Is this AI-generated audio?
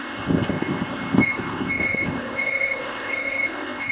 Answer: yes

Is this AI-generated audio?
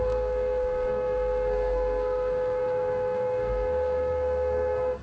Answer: yes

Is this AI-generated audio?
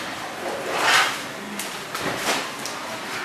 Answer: no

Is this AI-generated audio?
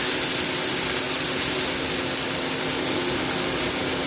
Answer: no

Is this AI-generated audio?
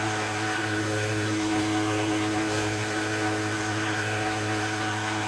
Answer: yes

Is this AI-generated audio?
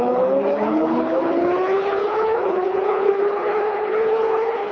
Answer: yes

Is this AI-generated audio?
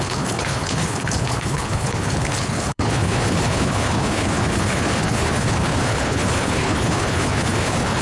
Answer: yes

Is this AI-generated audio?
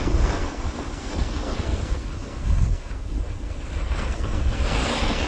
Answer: yes